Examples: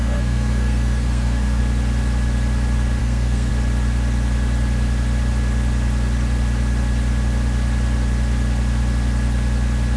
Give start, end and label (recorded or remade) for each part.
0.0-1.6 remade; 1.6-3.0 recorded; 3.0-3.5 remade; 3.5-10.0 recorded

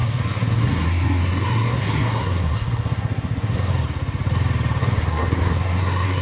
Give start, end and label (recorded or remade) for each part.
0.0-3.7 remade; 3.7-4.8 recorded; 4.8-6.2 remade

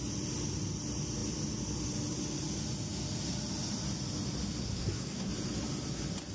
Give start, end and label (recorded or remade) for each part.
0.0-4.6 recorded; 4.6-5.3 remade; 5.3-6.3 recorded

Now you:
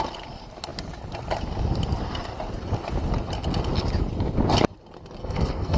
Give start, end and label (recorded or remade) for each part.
0.0-5.2 recorded; 5.2-5.8 remade